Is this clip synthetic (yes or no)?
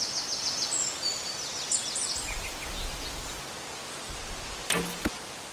no